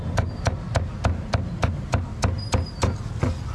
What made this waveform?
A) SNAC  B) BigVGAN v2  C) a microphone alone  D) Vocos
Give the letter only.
C